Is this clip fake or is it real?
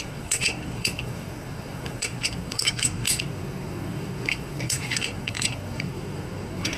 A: fake